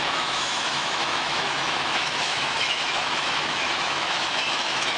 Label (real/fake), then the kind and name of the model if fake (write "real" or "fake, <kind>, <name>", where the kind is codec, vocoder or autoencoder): fake, autoencoder, DAC-VAE